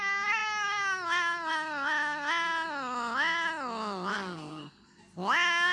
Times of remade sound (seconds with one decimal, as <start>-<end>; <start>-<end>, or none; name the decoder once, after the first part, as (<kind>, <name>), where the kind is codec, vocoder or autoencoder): 4.1-5.0 (codec, SNAC)